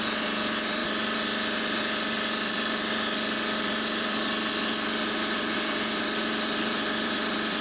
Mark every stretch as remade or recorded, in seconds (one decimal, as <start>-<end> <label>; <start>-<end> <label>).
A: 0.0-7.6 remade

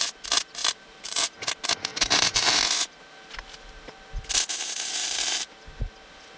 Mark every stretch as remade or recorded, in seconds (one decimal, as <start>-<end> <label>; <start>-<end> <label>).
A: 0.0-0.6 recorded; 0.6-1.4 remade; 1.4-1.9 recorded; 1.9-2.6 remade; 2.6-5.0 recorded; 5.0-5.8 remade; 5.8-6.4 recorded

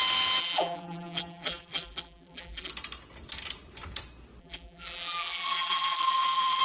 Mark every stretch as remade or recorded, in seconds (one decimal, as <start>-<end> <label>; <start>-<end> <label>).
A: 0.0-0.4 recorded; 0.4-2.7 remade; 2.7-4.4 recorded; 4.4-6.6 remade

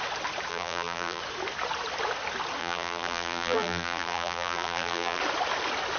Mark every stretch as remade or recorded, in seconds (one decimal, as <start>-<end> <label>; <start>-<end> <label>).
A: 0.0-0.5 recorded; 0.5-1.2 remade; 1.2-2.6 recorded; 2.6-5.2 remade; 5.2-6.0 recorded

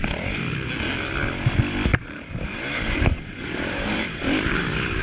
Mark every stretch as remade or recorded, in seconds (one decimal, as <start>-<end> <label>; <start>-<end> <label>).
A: 0.0-1.9 recorded; 1.9-5.0 remade